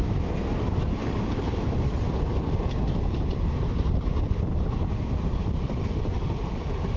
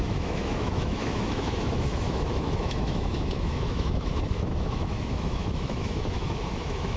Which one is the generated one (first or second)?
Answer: second